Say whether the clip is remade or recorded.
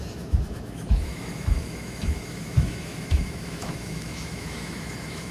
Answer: remade